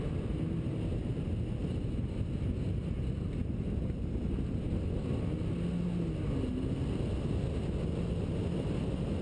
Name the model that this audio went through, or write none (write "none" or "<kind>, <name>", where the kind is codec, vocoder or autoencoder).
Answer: none